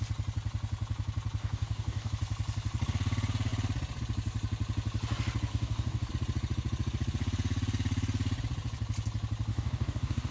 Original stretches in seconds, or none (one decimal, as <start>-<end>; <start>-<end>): 0.0-1.4; 2.1-5.5; 6.1-9.5